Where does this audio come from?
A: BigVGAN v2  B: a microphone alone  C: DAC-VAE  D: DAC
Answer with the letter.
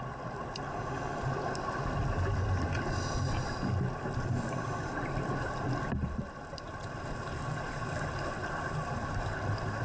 B